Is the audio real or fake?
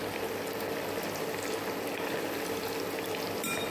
real